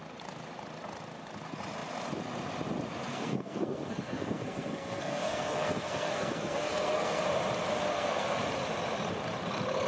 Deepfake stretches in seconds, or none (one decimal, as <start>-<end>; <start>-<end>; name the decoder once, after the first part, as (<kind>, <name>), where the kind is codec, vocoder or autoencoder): 3.1-7.2 (codec, SNAC); 7.9-8.4